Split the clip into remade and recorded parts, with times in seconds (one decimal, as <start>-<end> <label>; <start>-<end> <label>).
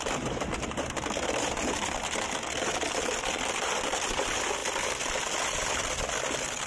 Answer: 0.0-6.7 recorded